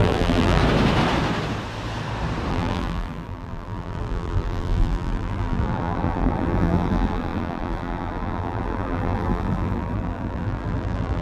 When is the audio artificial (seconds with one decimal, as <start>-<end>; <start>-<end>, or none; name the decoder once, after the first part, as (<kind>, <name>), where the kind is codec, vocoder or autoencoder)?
0.0-0.6 (vocoder, BigVGAN v2); 2.5-11.2